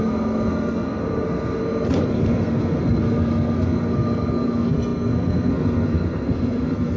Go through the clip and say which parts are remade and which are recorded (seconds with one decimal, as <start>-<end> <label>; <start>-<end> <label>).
0.0-1.6 remade; 1.6-2.1 recorded; 2.1-7.0 remade